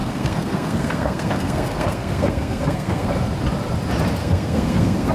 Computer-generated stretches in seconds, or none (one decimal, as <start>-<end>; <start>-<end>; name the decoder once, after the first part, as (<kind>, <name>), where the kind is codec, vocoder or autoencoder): 0.0-3.1 (codec, SNAC); 4.2-5.1